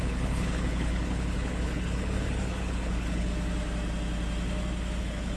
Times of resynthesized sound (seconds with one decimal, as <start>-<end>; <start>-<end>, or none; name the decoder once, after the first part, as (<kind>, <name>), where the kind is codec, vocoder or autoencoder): 0.0-3.3 (codec, HILCodec); 5.0-5.4

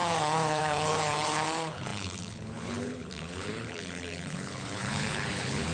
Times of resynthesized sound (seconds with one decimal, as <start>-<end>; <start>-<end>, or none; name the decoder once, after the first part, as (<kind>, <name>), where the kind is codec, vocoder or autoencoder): 0.0-5.7 (codec, HILCodec)

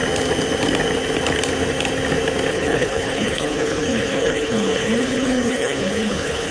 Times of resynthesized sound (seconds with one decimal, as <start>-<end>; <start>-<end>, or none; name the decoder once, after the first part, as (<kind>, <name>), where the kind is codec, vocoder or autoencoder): 2.5-6.5 (codec, HILCodec)

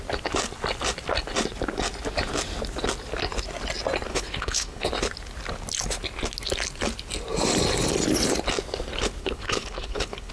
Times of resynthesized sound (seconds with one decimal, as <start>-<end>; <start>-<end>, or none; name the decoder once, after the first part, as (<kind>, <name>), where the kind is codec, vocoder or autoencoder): 4.1-4.9 (codec, HILCodec); 9.2-10.3

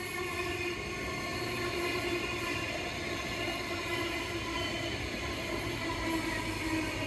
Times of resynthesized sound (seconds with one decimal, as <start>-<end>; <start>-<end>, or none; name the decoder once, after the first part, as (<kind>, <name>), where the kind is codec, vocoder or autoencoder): none